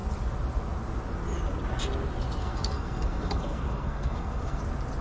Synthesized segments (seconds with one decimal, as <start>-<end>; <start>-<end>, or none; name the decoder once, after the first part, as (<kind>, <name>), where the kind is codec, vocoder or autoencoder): 2.4-4.6 (codec, SNAC)